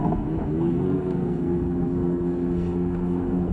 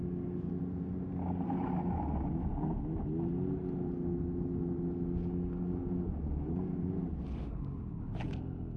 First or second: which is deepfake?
first